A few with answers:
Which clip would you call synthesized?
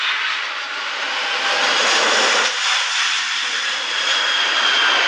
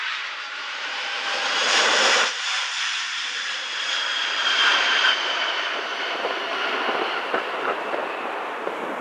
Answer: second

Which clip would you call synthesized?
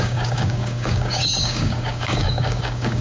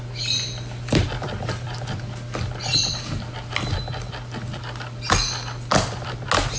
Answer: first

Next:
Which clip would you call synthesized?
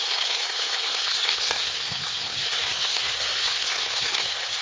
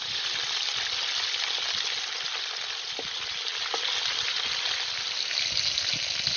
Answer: first